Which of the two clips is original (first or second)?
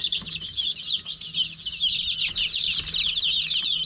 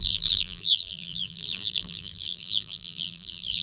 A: first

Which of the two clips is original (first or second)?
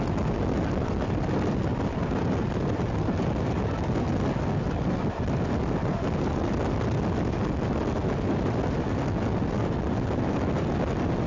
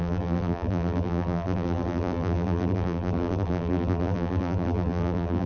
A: first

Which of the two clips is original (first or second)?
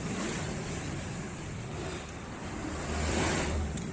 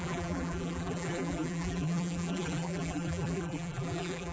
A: first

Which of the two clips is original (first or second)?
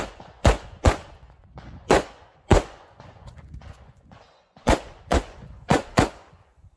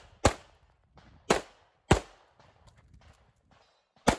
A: second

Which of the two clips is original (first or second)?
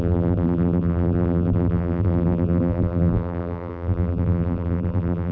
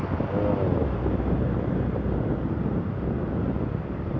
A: second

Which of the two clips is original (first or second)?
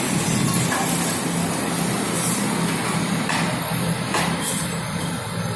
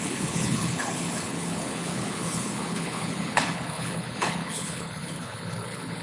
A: first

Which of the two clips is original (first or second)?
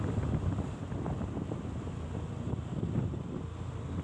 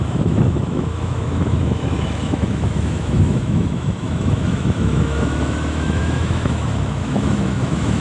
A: first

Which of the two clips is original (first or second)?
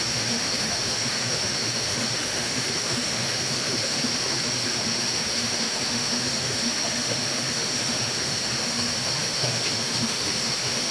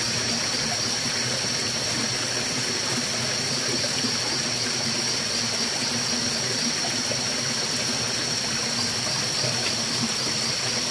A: second